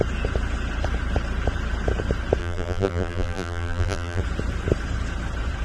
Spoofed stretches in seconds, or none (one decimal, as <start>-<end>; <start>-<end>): 2.4-4.2